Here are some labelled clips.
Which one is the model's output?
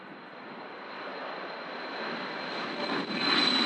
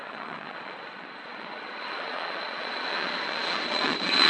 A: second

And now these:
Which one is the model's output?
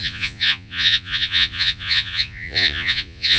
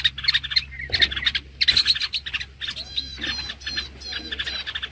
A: first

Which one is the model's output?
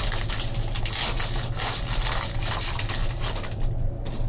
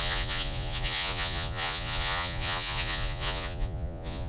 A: second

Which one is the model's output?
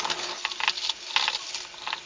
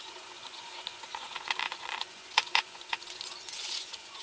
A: second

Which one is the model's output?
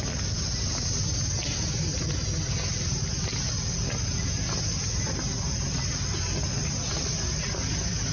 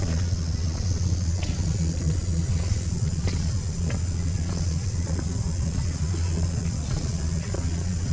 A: second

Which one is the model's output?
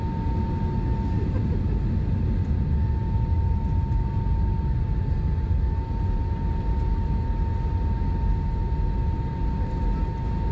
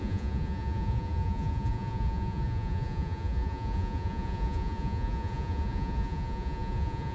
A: second